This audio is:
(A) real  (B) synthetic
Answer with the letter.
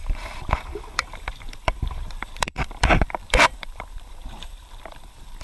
B